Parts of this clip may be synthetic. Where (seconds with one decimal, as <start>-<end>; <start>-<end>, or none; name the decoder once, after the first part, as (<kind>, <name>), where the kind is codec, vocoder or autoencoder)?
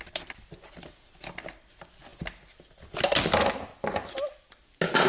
none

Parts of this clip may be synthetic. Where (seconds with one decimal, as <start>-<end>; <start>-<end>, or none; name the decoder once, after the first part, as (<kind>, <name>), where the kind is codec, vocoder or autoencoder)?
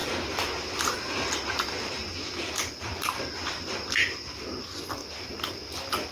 5.0-5.6 (vocoder, BigVGAN v2)